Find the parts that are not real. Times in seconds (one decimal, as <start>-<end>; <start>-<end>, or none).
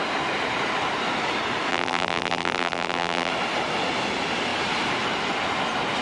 1.7-3.3